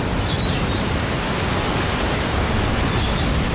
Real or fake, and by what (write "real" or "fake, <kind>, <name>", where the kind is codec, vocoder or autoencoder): real